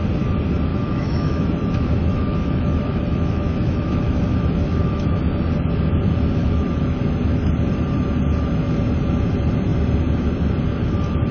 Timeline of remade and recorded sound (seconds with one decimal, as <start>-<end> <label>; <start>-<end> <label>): 0.0-0.7 recorded; 0.7-5.2 remade; 5.2-6.4 recorded; 6.4-7.0 remade; 7.0-11.3 recorded